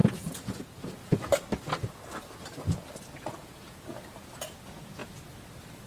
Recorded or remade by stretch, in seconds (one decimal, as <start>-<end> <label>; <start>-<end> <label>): 0.0-1.3 remade; 1.3-3.3 recorded; 3.3-5.0 remade; 5.0-5.9 recorded